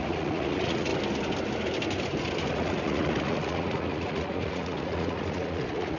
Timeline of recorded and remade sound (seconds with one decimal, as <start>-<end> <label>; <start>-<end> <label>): 0.0-0.9 remade; 0.9-2.5 recorded; 2.5-6.0 remade